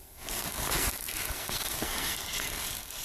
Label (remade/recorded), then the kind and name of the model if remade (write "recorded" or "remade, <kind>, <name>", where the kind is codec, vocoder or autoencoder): remade, codec, SNAC